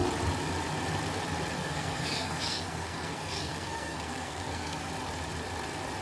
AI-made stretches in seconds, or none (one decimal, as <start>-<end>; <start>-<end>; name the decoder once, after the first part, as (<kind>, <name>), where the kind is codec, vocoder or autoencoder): 1.6-4.9 (codec, SNAC)